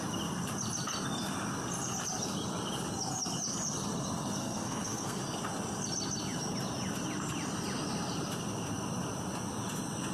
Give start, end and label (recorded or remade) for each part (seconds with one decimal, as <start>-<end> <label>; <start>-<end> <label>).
0.0-4.4 recorded; 4.4-5.2 remade; 5.2-10.1 recorded